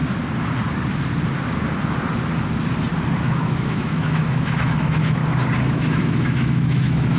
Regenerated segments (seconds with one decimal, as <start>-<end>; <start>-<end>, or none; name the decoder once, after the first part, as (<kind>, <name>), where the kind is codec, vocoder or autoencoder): 3.2-5.2 (autoencoder, DAC-VAE); 5.7-7.2